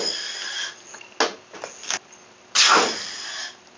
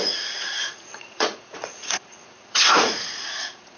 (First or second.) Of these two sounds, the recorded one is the first